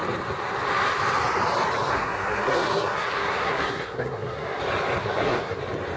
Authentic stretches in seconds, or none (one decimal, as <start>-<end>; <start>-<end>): 0.0-1.9; 4.6-5.0; 5.6-6.0